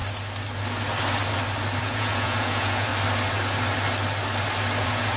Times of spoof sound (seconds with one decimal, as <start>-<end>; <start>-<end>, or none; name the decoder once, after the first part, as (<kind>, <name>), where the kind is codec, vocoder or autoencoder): 1.8-2.9 (vocoder, Vocos); 4.8-5.2